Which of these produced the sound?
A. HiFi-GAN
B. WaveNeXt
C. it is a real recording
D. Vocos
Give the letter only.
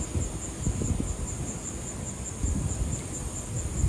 C